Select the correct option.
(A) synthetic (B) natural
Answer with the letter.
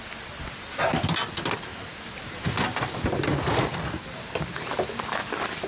B